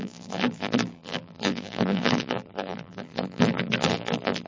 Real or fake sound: fake